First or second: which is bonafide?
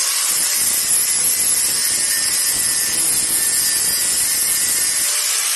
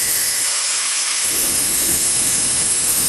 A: first